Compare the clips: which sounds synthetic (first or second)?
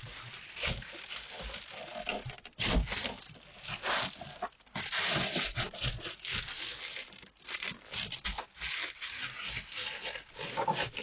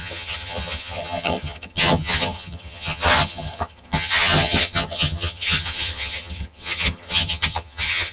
second